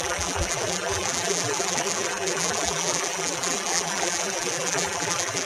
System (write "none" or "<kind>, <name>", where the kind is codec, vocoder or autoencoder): vocoder, BigVGAN v2